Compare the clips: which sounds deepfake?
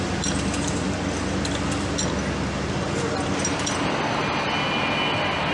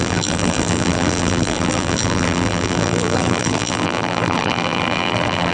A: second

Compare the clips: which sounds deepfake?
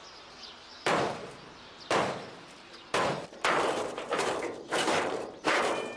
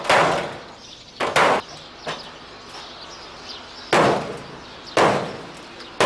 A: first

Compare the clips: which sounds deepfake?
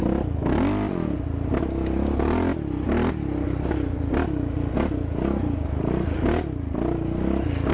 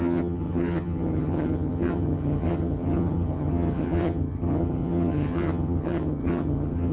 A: second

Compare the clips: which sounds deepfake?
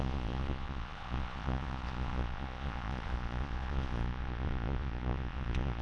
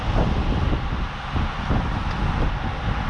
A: first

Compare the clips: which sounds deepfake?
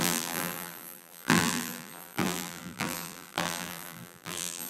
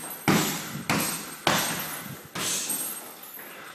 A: first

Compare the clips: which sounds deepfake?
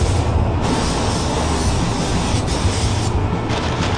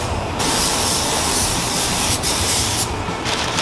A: second